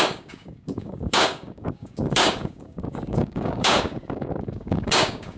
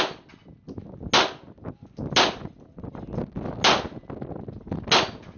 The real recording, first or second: second